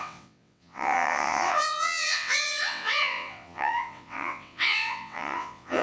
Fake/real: fake